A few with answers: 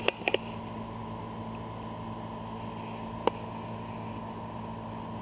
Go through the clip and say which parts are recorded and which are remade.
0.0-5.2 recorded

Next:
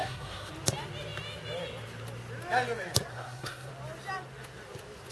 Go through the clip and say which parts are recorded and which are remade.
0.0-0.5 remade; 0.5-3.1 recorded; 3.1-3.7 remade; 3.7-5.1 recorded

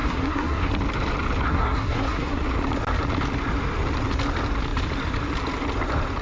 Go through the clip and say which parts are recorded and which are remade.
0.0-0.7 remade; 0.7-1.5 recorded; 1.5-2.4 remade; 2.4-6.2 recorded